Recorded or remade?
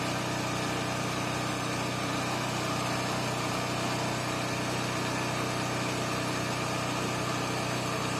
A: recorded